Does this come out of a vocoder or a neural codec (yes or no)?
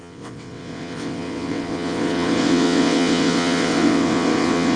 yes